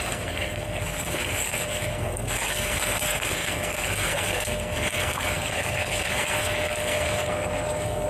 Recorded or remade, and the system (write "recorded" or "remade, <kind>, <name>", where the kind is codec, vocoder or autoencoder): remade, codec, SNAC